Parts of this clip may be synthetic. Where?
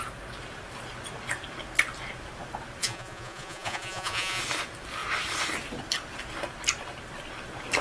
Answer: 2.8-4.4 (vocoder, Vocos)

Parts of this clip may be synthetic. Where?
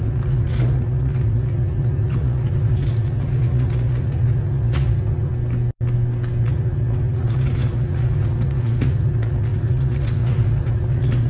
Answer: 0.0-5.3 (vocoder, Vocos); 6.4-11.3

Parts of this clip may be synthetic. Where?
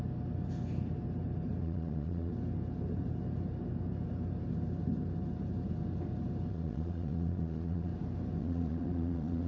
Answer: 1.6-2.3 (vocoder, Vocos); 6.5-7.9; 8.4-9.5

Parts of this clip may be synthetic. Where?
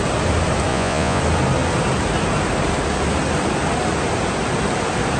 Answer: 0.7-1.2 (vocoder, Vocos)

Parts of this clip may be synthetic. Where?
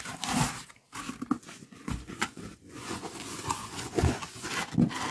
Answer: 1.4-4.5 (vocoder, Vocos)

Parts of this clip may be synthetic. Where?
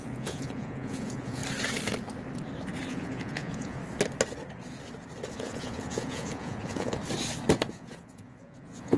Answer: 0.0-1.4 (vocoder, Vocos); 2.9-3.8; 5.3-7.0; 7.7-9.0